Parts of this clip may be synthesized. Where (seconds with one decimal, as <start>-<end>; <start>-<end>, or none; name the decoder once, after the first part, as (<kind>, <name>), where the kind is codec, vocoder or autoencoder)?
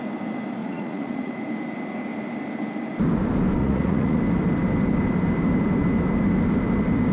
0.6-1.3 (vocoder, Vocos); 3.6-4.2